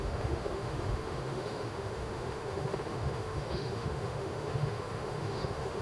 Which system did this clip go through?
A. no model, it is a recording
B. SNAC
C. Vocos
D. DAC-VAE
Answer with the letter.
D